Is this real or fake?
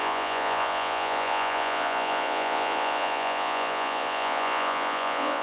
fake